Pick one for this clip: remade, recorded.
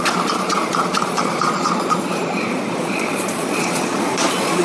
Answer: remade